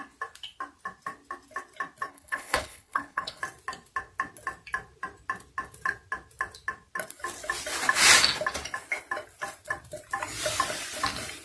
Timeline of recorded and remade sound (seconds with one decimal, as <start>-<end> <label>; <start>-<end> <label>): 0.0-2.1 recorded; 2.1-3.4 remade; 3.4-11.4 recorded